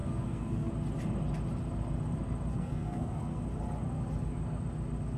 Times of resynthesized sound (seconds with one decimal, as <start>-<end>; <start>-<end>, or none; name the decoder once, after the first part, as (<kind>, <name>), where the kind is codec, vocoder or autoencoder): 0.0-0.7 (codec, SNAC); 2.5-3.4